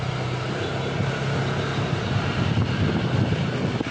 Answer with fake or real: real